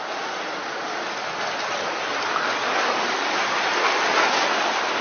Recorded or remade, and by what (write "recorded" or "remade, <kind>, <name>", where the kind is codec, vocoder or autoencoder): recorded